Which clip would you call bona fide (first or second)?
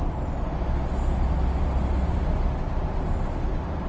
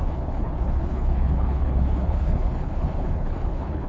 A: first